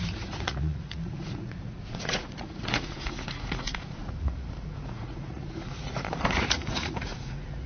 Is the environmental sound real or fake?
fake